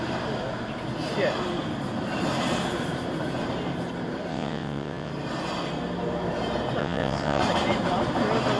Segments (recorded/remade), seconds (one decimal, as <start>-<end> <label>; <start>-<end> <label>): 0.0-4.3 recorded; 4.3-5.1 remade; 5.1-6.8 recorded; 6.8-7.4 remade; 7.4-8.6 recorded